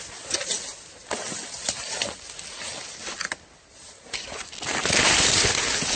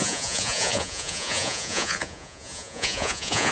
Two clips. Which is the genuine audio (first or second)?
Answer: first